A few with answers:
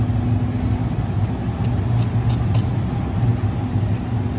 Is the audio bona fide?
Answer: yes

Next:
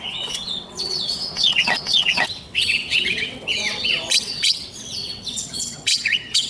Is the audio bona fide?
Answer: no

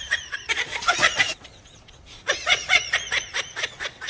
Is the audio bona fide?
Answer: no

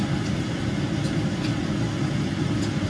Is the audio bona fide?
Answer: yes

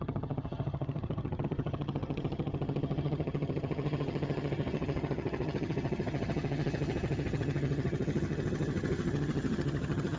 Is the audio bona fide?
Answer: no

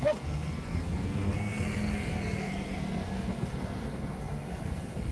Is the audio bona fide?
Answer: no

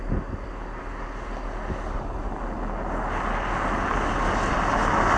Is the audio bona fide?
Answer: yes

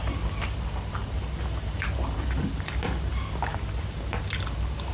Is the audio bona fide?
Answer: yes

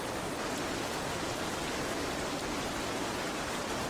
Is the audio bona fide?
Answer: yes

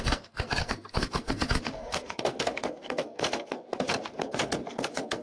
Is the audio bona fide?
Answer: no